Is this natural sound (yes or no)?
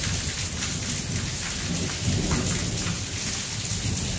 yes